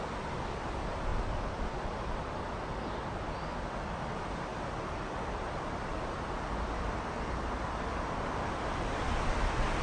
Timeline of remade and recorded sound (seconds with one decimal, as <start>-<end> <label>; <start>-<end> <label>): 0.0-4.5 remade; 4.5-6.5 recorded; 6.5-9.8 remade